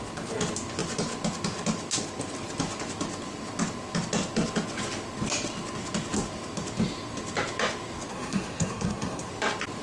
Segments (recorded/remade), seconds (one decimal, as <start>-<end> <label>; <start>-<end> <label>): 0.0-8.1 recorded; 8.1-9.3 remade; 9.3-9.8 recorded